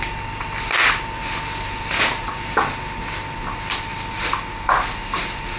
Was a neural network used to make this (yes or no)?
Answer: no